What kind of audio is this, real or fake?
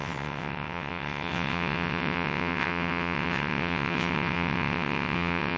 fake